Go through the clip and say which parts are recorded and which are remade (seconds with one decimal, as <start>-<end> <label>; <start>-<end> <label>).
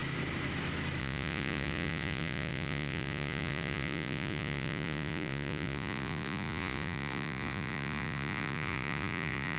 0.0-1.0 recorded; 1.0-9.6 remade